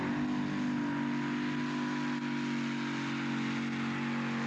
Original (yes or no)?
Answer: yes